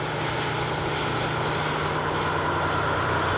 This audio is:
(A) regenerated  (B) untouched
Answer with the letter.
B